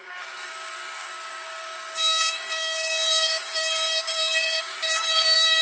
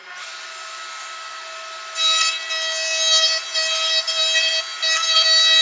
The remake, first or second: first